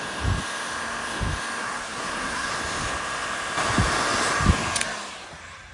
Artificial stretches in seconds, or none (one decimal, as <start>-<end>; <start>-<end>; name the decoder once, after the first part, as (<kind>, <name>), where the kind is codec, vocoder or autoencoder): 1.6-2.5 (codec, SNAC)